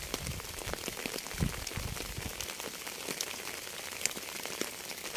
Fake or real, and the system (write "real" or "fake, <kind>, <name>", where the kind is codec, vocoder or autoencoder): real